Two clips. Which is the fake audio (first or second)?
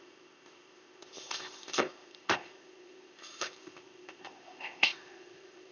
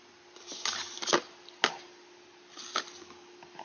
first